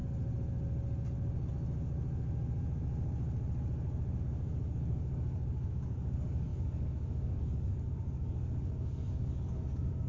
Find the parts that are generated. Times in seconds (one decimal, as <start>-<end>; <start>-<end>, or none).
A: 4.2-10.1